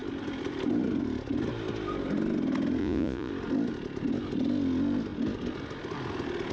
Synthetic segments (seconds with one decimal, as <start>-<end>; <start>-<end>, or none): 2.8-3.3